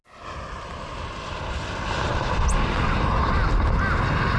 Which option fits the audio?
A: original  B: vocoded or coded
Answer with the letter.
A